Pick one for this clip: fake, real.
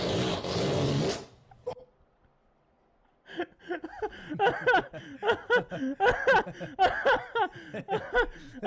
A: real